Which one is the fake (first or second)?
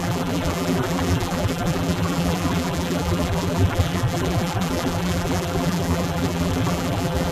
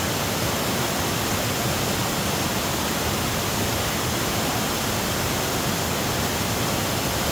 first